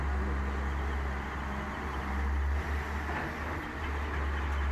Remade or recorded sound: recorded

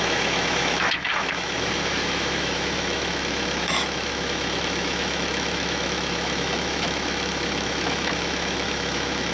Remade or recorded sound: remade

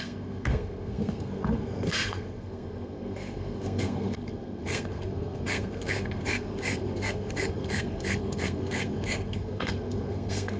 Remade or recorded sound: remade